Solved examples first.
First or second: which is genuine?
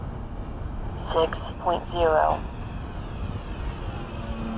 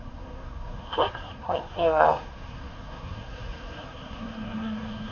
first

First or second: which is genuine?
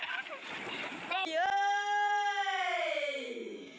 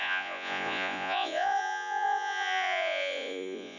first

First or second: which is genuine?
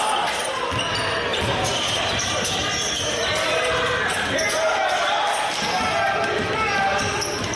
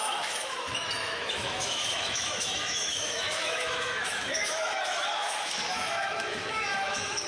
first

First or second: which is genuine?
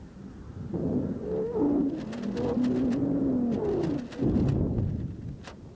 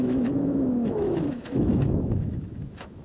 first